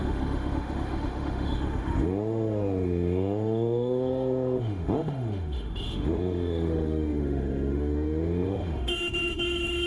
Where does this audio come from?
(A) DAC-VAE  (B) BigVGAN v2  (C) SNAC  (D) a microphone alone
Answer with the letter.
A